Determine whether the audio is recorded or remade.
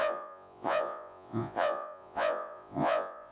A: remade